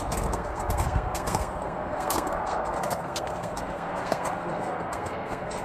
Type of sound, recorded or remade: remade